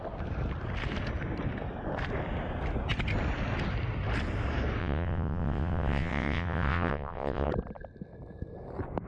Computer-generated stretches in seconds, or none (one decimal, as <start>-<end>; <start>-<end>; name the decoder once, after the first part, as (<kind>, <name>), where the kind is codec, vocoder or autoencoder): 4.8-7.5 (vocoder, WaveNeXt)